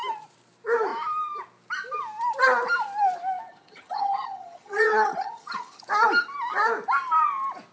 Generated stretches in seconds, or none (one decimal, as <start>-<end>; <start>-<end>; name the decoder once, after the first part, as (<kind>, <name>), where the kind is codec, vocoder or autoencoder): 3.5-5.8 (vocoder, HiFi-GAN)